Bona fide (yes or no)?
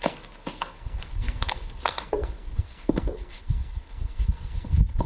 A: no